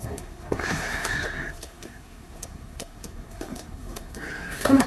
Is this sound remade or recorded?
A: remade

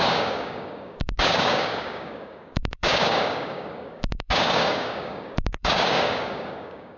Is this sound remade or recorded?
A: remade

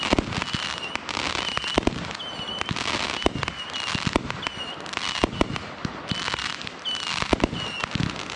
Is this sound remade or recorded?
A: recorded